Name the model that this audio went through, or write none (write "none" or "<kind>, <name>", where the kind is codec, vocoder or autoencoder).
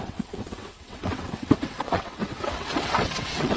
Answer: vocoder, WaveNeXt